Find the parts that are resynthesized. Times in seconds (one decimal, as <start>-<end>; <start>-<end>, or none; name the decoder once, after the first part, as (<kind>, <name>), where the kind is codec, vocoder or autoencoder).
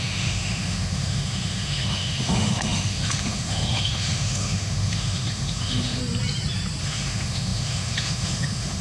0.0-6.0 (autoencoder, DAC-VAE); 6.8-8.8